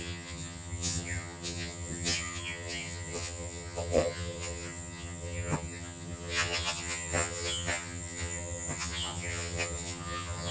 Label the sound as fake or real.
fake